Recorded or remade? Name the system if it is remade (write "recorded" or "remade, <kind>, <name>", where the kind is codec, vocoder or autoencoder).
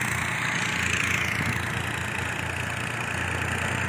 recorded